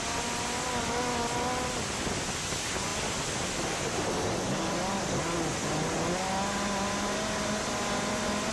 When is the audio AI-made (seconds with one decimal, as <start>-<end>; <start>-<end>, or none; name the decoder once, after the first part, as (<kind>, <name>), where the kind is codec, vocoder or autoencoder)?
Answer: none